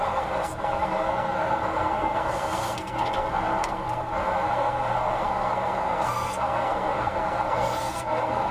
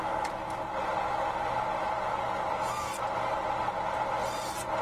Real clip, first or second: second